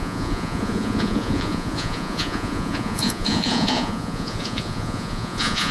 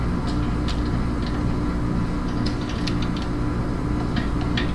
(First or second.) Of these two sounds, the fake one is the first